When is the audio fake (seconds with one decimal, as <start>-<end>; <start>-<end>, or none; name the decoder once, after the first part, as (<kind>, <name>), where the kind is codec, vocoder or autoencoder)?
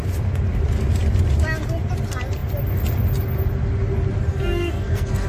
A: 4.3-5.3 (codec, SNAC)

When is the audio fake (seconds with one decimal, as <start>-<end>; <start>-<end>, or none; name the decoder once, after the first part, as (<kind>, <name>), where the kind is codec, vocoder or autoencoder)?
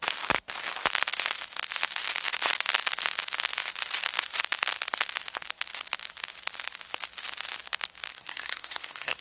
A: 8.1-9.2 (codec, SNAC)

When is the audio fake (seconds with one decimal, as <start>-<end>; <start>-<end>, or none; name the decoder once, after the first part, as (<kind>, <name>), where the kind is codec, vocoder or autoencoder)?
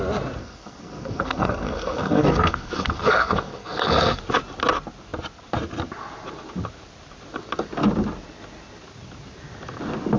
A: 0.4-4.2 (codec, SNAC)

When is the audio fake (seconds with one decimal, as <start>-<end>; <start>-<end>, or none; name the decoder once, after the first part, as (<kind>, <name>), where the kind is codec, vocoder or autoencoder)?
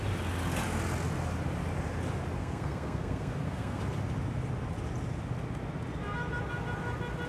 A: 2.4-3.8 (codec, SNAC)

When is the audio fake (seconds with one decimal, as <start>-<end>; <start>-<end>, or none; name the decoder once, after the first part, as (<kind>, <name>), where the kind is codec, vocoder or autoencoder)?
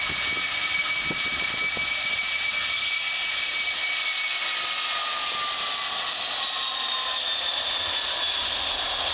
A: none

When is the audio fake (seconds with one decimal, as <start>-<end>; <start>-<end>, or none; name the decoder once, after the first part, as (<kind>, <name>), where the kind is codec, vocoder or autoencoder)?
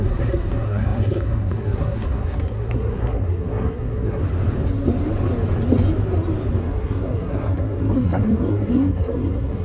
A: 0.0-4.2 (codec, SNAC); 6.6-9.6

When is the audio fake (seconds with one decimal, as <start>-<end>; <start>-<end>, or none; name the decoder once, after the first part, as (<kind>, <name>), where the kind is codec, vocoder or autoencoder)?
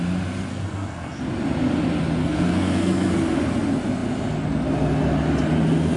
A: 0.5-1.2 (codec, SNAC); 2.2-3.1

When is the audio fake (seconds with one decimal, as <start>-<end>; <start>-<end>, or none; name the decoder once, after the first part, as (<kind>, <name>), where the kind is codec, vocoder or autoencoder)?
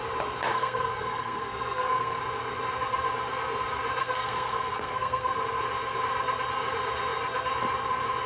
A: 0.5-2.2 (codec, SNAC); 4.0-5.4